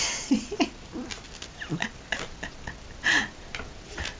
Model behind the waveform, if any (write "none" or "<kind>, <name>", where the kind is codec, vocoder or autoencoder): none